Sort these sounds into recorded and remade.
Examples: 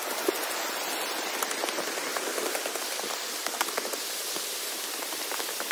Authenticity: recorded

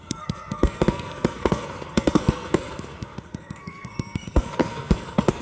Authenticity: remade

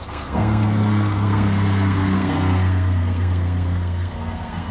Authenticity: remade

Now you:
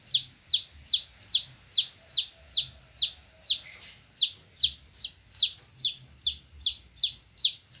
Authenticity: recorded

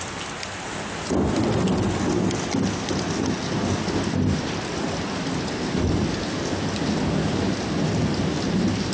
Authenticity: recorded